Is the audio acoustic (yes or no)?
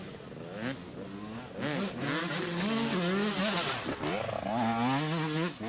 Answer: yes